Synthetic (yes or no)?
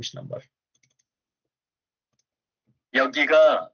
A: no